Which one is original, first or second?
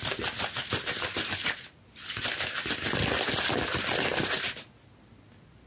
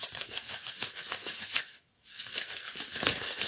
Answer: first